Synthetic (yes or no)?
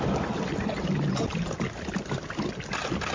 no